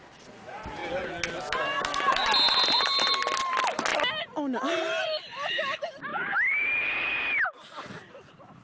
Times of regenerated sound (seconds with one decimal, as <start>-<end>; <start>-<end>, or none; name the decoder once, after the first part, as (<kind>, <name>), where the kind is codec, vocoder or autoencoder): 6.1-8.1 (vocoder, BigVGAN v2)